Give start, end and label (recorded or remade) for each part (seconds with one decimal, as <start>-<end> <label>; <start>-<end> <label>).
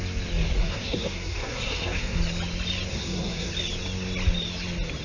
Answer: 0.0-0.6 recorded; 0.6-2.2 remade; 2.2-2.9 recorded; 2.9-3.5 remade; 3.5-5.0 recorded